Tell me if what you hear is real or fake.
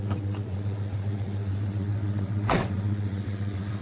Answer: fake